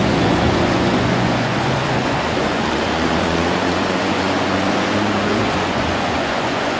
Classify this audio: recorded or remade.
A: remade